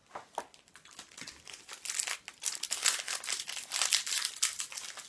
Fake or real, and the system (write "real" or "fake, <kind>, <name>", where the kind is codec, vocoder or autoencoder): real